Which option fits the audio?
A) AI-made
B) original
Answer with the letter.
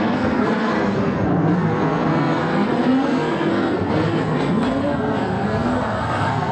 A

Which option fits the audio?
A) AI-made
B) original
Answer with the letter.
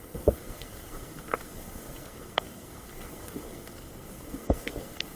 A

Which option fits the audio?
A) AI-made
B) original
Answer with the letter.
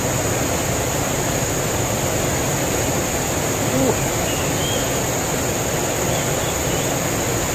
B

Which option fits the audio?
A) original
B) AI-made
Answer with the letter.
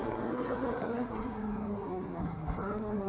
B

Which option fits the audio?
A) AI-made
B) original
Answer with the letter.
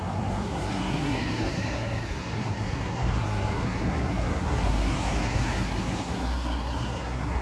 A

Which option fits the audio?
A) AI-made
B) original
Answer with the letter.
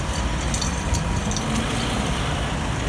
B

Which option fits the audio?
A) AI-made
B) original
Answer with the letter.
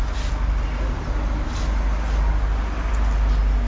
B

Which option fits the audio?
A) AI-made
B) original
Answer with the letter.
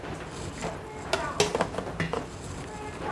B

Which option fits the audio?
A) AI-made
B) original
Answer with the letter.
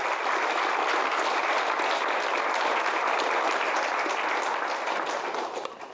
B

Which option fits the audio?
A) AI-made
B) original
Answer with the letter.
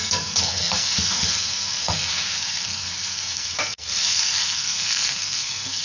A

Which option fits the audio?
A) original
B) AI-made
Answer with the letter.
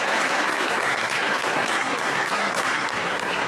B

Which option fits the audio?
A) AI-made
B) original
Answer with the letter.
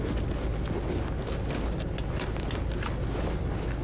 B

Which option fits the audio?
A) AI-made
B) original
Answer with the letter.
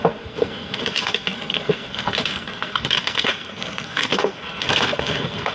A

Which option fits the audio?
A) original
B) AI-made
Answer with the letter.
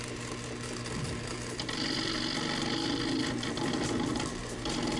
A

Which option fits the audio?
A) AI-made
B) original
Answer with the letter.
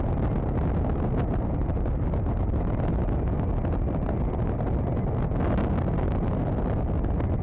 B